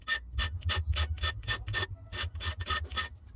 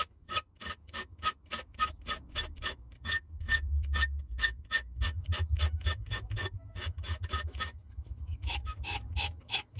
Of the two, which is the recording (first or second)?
first